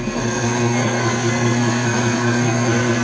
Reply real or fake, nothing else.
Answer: fake